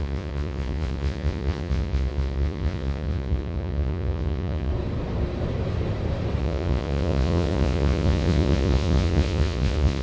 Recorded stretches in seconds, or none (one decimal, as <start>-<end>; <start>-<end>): 4.7-6.4